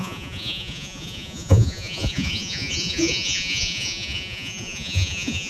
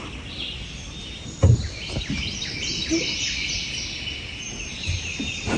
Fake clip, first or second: first